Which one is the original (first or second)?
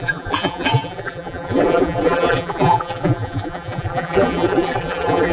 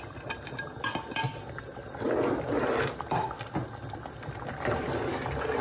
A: second